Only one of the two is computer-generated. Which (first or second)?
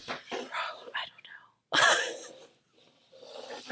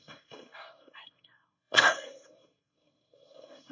second